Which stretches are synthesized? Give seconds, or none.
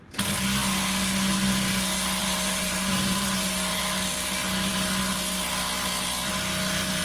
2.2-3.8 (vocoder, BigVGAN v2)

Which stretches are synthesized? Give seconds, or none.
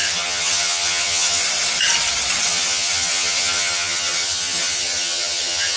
0.0-1.4 (vocoder, HiFi-GAN); 2.5-5.8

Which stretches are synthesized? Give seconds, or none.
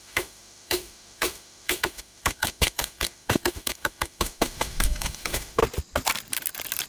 0.0-5.6 (autoencoder, DAC-VAE)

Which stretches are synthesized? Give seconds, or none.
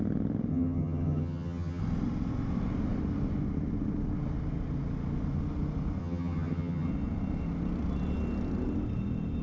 0.5-1.8 (vocoder, HiFi-GAN); 6.0-6.9